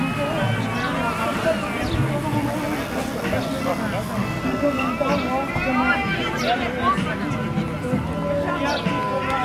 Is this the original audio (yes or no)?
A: yes